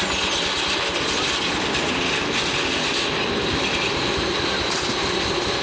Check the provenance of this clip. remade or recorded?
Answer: recorded